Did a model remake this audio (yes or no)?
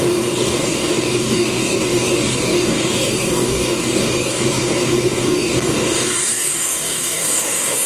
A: yes